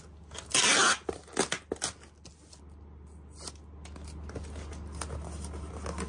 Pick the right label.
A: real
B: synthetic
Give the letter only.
A